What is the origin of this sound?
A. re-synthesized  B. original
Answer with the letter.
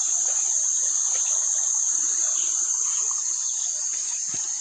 B